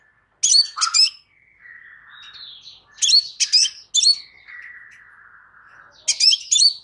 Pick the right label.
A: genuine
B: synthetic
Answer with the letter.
A